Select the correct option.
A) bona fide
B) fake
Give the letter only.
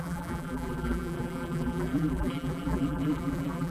B